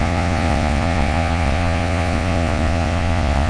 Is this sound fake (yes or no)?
yes